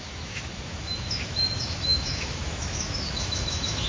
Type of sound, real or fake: fake